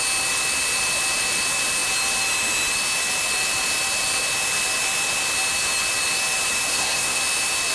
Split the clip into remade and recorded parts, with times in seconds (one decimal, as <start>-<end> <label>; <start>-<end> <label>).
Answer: 0.0-6.7 recorded; 6.7-7.2 remade; 7.2-7.7 recorded